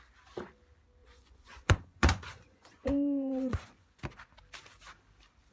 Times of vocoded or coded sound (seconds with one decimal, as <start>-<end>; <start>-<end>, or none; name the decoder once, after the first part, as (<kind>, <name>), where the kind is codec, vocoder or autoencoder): 1.0-4.0 (vocoder, Vocos)